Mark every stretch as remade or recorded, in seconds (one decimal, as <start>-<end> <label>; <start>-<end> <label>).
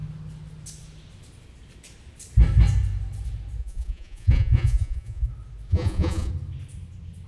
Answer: 0.0-3.6 recorded; 3.6-5.3 remade; 5.3-5.7 recorded; 5.7-6.3 remade; 6.3-7.3 recorded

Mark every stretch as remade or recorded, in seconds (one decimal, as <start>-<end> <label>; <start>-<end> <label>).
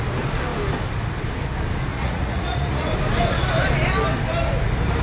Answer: 0.0-1.9 recorded; 1.9-2.9 remade; 2.9-5.0 recorded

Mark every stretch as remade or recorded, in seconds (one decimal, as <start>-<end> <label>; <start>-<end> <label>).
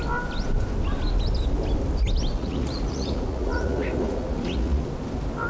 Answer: 0.0-2.3 recorded; 2.3-4.8 remade; 4.8-5.5 recorded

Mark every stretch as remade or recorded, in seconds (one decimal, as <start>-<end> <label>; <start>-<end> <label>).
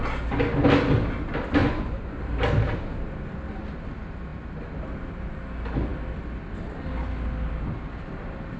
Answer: 0.0-1.6 recorded; 1.6-2.2 remade; 2.2-8.6 recorded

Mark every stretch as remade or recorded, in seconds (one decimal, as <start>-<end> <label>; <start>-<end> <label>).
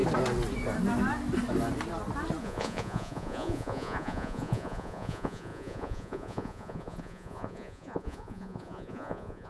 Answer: 0.0-2.4 recorded; 2.4-9.5 remade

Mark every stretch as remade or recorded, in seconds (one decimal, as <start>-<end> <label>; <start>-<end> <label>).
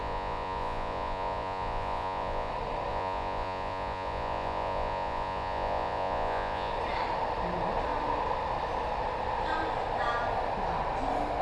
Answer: 0.0-2.5 remade; 2.5-2.9 recorded; 2.9-6.7 remade; 6.7-11.4 recorded